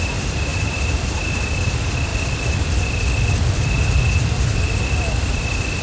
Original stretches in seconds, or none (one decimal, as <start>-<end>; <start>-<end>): 0.0-0.5; 1.3-2.1